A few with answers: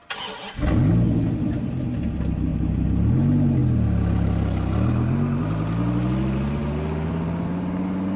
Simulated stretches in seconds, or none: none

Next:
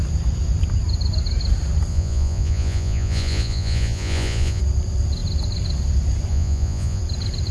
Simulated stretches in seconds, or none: 1.9-4.6 (vocoder, Vocos); 6.3-7.0